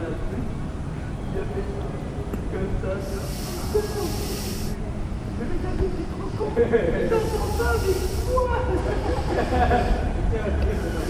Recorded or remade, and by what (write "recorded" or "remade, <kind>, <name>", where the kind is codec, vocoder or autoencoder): remade, vocoder, BigVGAN v2